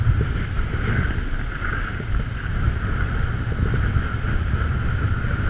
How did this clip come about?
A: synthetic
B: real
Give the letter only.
B